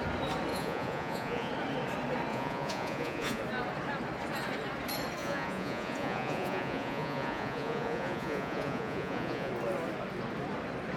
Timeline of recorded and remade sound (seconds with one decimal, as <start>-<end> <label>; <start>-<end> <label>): 0.0-0.5 recorded; 0.5-1.5 remade; 1.5-2.3 recorded; 2.3-3.4 remade; 3.4-5.2 recorded; 5.2-9.5 remade; 9.5-11.0 recorded